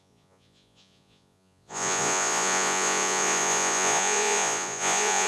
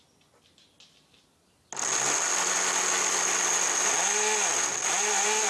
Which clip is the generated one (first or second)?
first